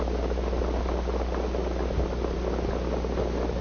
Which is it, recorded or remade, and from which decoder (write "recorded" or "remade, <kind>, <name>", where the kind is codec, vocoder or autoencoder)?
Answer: recorded